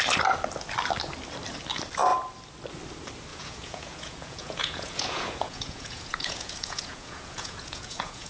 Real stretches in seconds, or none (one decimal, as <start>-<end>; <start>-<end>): 0.0-3.3